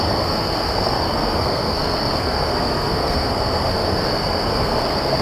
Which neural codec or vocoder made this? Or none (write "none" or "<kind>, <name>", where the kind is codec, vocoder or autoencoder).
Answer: codec, SNAC